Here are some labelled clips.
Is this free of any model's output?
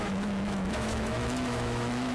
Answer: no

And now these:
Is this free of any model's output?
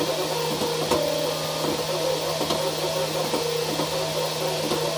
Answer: yes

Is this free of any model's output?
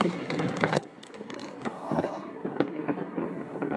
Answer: no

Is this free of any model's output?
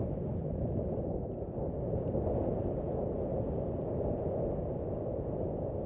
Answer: yes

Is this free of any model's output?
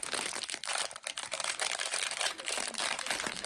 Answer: no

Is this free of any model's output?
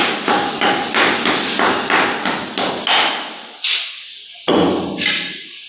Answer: yes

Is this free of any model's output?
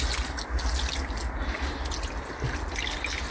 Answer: yes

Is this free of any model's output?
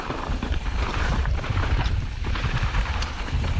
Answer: no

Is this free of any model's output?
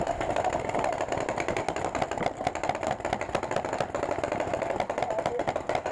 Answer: yes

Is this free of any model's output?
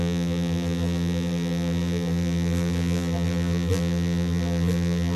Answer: no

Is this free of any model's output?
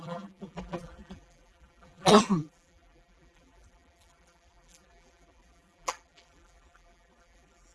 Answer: no